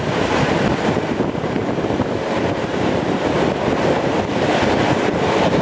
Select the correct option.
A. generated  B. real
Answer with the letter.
B